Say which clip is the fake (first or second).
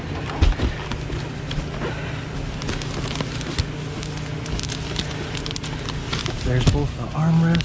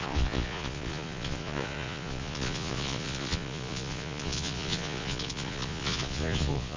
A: second